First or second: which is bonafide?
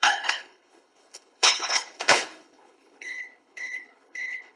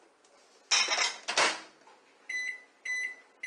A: second